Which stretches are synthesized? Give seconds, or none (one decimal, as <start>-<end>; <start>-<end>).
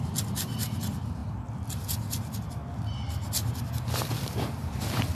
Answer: none